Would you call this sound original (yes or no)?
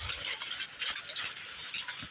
yes